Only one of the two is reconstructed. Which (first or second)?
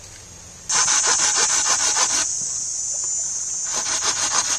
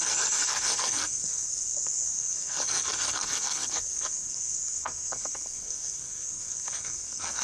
second